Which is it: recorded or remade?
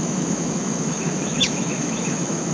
remade